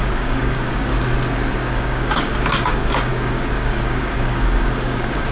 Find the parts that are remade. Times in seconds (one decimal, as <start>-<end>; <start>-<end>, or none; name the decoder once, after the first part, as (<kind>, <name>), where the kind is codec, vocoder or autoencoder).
0.0-0.9 (codec, DAC); 1.5-5.3